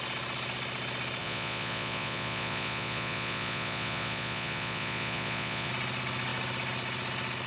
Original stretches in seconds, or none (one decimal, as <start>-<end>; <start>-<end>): 0.0-1.2; 5.7-7.5

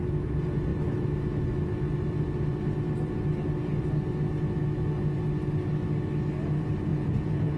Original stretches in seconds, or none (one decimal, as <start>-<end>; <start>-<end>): 0.0-6.9

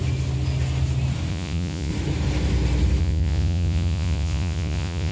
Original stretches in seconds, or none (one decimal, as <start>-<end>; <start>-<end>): 0.0-1.3; 1.9-3.0

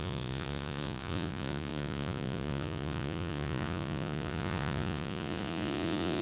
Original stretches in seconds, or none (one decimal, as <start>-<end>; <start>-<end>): none

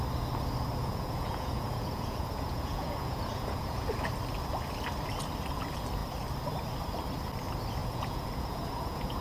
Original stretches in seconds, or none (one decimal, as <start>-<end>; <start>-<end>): 0.0-0.8; 4.1-7.8

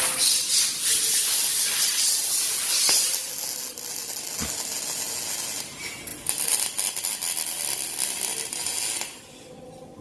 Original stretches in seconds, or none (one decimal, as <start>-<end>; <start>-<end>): 0.0-10.0

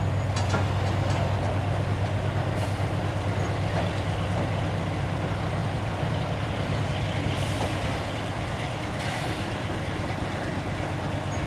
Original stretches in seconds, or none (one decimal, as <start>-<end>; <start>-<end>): 0.0-11.5

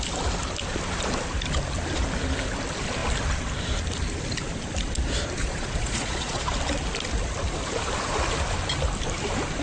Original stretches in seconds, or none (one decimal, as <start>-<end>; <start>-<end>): 0.0-5.4; 6.5-9.6